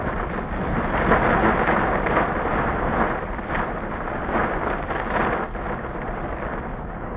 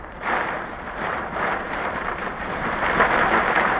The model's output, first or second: second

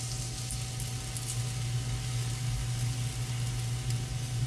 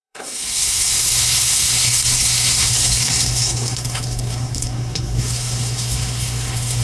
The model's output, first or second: second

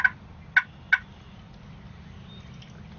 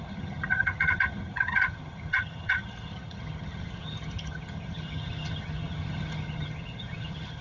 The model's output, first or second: second